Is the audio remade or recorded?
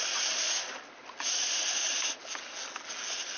recorded